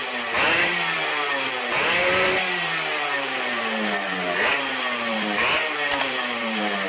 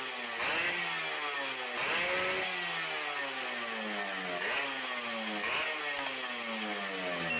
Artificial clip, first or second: first